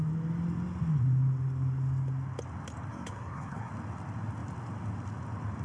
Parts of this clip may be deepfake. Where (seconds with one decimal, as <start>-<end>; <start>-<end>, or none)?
2.9-3.7